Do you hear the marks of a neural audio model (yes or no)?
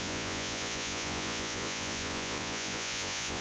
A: yes